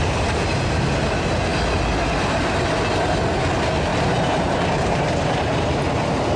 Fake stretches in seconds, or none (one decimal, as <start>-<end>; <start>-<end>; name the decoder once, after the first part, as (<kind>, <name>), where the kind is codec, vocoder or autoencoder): 3.9-5.0 (vocoder, BigVGAN v2)